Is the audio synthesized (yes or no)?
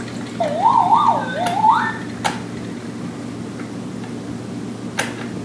no